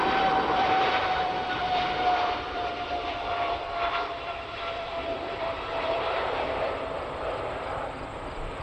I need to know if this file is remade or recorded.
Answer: remade